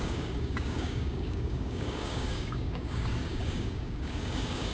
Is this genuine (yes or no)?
no